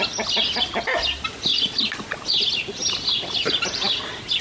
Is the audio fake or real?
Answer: real